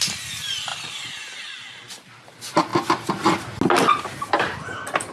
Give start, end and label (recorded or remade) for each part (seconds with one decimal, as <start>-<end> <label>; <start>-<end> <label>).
0.0-5.1 recorded